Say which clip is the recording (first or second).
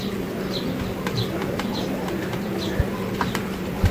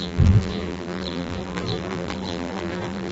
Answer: first